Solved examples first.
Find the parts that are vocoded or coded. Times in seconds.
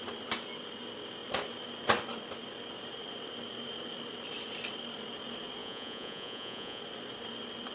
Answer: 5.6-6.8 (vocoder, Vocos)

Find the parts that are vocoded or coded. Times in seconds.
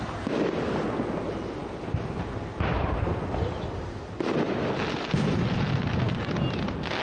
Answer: none